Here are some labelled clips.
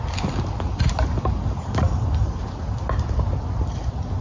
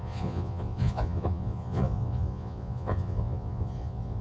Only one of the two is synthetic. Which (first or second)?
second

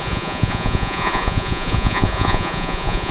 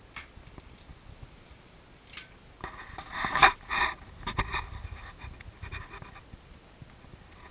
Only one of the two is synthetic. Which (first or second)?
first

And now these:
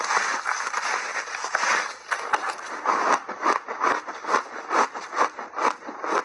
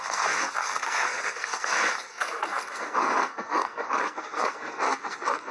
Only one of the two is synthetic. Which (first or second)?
second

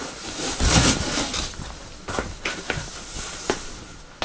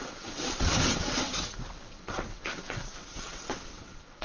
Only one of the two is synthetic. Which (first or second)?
second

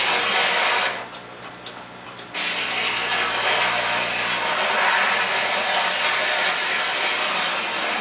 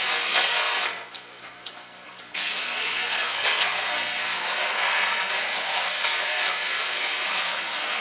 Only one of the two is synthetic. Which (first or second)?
second